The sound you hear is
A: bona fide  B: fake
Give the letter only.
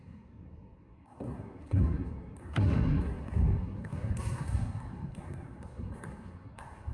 B